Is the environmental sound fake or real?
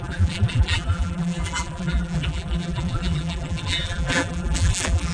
fake